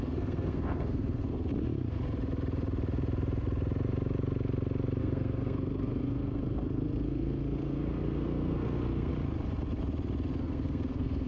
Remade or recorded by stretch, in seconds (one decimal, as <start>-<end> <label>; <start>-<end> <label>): 0.0-1.5 remade; 1.5-5.0 recorded; 5.0-9.1 remade; 9.1-10.4 recorded; 10.4-11.3 remade